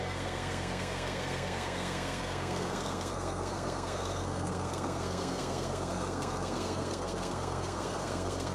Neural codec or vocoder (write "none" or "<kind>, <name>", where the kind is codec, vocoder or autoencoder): codec, SNAC